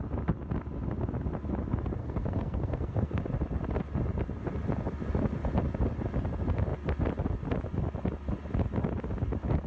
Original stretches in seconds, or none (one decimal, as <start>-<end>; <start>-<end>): 0.0-2.0; 3.2-9.7